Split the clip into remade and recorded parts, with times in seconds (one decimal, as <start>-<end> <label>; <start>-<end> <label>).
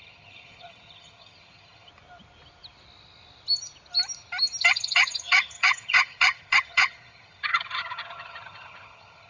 0.0-1.9 remade; 1.9-4.6 recorded; 4.6-9.3 remade